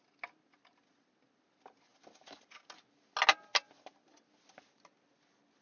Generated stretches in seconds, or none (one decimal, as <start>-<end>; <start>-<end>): none